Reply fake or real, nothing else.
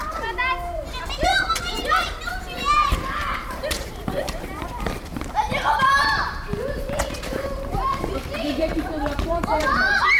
fake